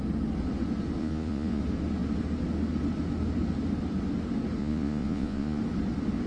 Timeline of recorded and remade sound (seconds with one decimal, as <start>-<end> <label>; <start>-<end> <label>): 0.0-1.0 recorded; 1.0-1.6 remade; 1.6-4.6 recorded; 4.6-5.6 remade; 5.6-6.3 recorded